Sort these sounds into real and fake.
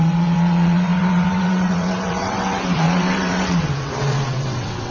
fake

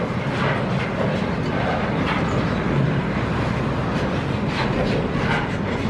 real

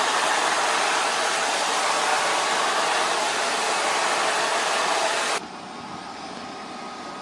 real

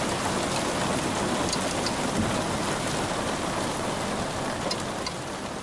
real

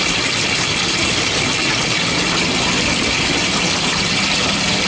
real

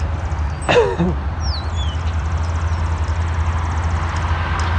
real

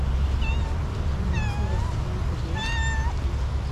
real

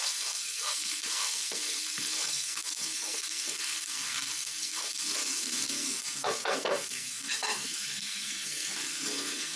fake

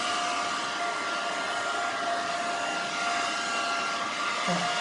real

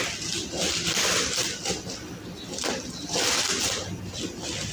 real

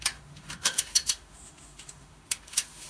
fake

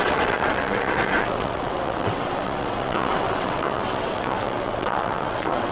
fake